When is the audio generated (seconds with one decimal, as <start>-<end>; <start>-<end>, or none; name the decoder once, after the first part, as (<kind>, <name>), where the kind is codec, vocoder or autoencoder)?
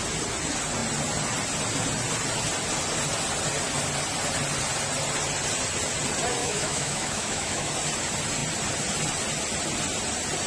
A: 6.4-7.7 (autoencoder, DAC-VAE)